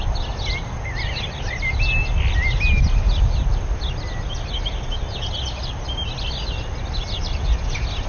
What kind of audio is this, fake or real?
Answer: real